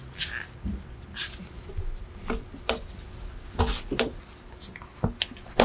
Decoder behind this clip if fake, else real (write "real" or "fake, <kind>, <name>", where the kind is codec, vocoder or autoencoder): real